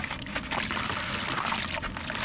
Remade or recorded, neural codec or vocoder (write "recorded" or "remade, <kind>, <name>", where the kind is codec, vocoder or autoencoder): recorded